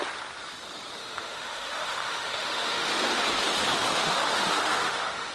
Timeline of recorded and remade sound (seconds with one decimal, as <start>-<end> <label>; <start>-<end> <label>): 0.0-1.0 recorded; 1.0-2.9 remade; 2.9-3.9 recorded; 3.9-5.3 remade